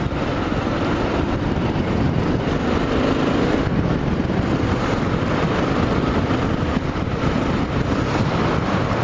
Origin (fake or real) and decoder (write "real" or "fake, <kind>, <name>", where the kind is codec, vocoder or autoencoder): fake, vocoder, BigVGAN v2